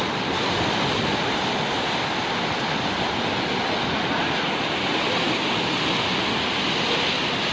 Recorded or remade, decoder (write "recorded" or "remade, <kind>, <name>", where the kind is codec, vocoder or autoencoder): recorded